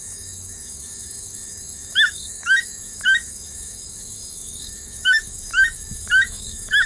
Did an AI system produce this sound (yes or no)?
yes